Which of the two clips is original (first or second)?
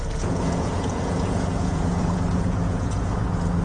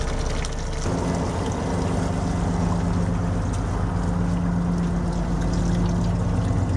second